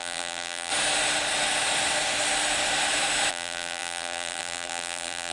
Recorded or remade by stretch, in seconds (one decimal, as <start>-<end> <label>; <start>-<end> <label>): 0.0-0.7 remade; 0.7-3.3 recorded; 3.3-5.3 remade